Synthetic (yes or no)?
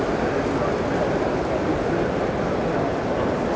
no